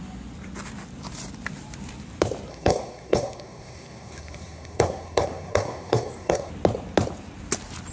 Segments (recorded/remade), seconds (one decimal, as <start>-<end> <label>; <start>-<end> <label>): 0.0-2.5 recorded; 2.5-6.5 remade; 6.5-7.9 recorded